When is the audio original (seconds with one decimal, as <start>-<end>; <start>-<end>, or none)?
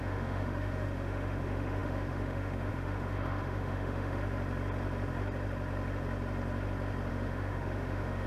4.2-7.1